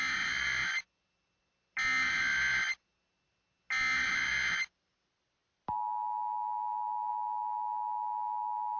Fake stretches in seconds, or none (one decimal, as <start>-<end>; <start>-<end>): none